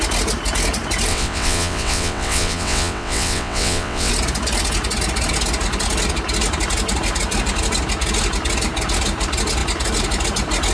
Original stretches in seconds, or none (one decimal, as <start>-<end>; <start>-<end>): 0.0-1.1; 4.1-10.7